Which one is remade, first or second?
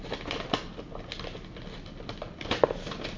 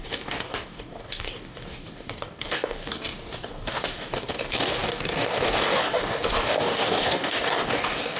second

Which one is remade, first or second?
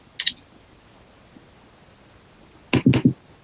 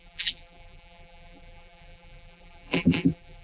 second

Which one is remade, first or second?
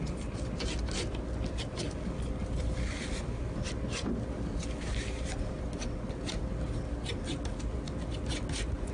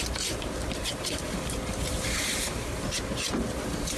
second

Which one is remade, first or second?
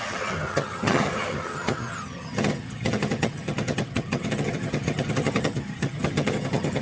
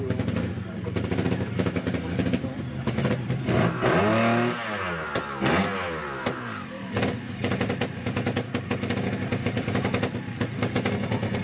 first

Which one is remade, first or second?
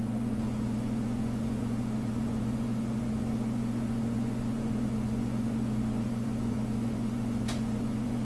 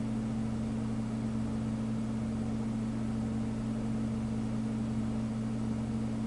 first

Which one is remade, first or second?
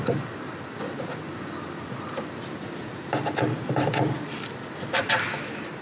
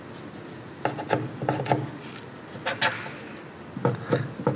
first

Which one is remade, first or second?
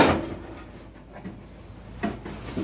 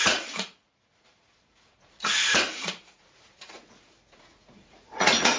second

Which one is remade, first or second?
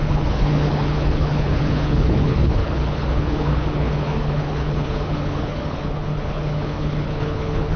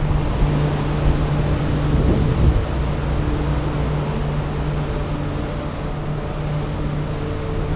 first